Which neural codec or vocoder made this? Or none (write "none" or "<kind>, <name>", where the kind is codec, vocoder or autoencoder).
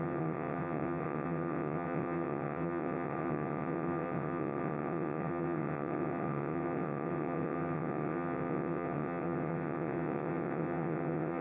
vocoder, WaveNeXt